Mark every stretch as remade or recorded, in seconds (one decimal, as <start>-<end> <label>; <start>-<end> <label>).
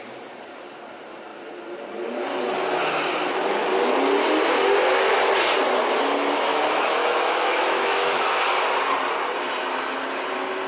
0.0-6.5 recorded; 6.5-8.4 remade; 8.4-10.7 recorded